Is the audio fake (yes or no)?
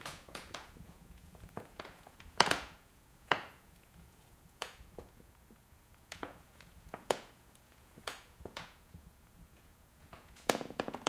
yes